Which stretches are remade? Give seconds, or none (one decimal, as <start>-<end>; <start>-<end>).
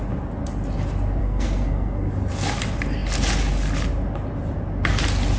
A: 1.2-2.1